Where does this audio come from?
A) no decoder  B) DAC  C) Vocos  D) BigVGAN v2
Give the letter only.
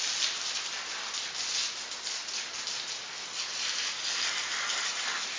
A